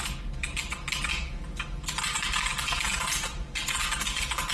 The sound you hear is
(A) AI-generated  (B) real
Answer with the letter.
B